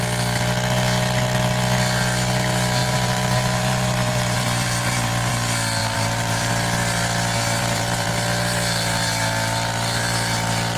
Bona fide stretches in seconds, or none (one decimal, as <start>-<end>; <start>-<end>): 0.0-2.8; 5.3-5.8; 6.5-7.6; 8.1-10.8